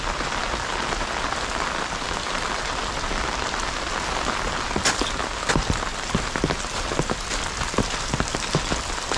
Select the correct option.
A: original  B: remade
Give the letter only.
A